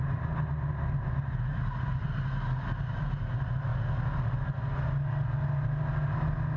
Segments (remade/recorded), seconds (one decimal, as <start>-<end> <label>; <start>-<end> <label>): 0.0-6.6 recorded